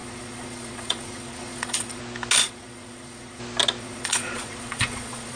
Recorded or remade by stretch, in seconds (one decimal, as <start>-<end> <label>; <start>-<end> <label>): 0.0-2.0 remade; 2.0-2.4 recorded; 2.4-3.4 remade; 3.4-3.8 recorded; 3.8-5.4 remade